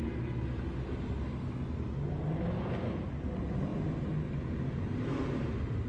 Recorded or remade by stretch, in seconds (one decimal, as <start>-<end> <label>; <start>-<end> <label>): 0.0-5.9 recorded